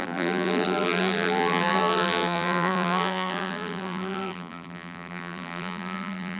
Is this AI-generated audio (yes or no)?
yes